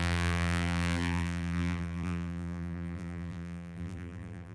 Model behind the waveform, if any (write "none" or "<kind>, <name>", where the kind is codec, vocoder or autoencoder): vocoder, BigVGAN v2